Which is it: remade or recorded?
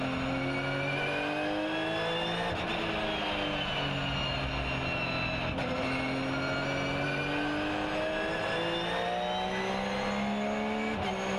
recorded